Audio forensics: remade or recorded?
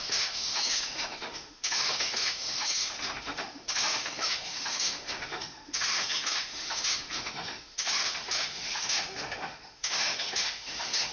remade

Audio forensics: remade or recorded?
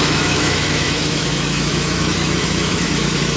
remade